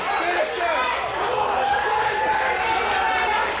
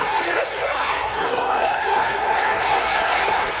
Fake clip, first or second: second